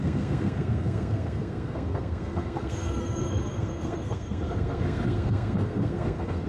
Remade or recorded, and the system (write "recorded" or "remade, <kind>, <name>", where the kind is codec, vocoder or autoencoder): remade, codec, SNAC